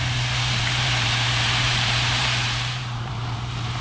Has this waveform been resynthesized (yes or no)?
yes